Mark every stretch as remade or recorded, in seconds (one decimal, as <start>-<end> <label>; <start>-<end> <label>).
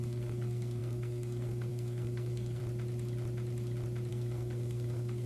0.0-2.6 remade; 2.6-4.1 recorded; 4.1-5.3 remade